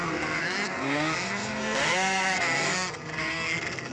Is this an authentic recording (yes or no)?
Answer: no